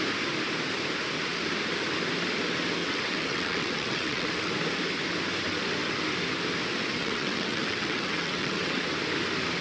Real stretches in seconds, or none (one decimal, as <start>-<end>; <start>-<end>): 0.0-2.8; 4.5-7.0; 8.8-9.6

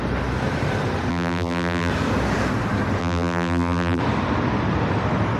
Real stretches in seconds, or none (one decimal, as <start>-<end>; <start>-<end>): 0.0-1.1; 1.9-3.0; 4.0-5.4

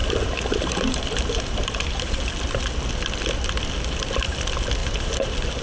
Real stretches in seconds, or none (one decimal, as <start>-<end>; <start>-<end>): 2.2-4.8

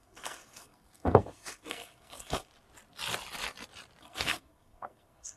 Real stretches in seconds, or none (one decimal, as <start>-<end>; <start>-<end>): 2.5-4.0